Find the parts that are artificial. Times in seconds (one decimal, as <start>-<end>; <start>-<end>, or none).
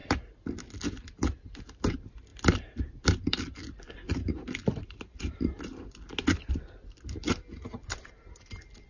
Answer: none